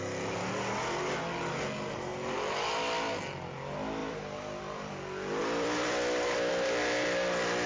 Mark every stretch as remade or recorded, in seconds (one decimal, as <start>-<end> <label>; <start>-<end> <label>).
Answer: 0.0-4.0 recorded; 4.0-4.9 remade; 4.9-5.4 recorded; 5.4-6.5 remade; 6.5-7.7 recorded